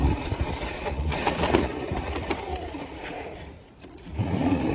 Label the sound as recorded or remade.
remade